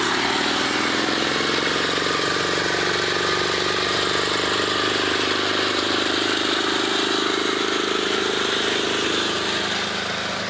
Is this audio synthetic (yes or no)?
no